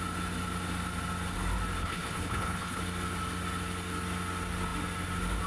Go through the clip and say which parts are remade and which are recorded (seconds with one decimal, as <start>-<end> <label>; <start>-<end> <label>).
0.0-1.8 recorded; 1.8-2.8 remade; 2.8-5.5 recorded